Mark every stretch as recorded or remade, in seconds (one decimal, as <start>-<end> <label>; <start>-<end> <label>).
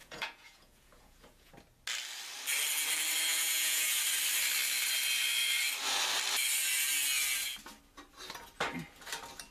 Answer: 0.0-1.5 remade; 1.5-3.3 recorded; 3.3-4.0 remade; 4.0-9.5 recorded